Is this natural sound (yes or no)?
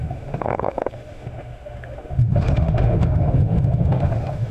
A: no